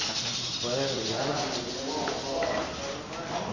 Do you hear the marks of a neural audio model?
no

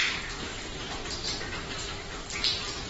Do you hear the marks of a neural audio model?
no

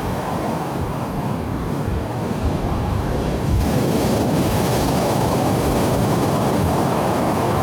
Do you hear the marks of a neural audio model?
yes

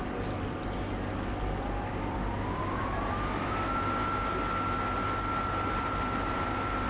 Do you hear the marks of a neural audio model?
no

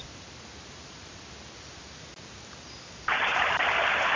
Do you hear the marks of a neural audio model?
no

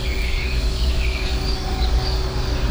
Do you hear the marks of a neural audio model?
yes